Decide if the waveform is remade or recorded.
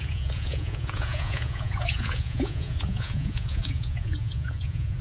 remade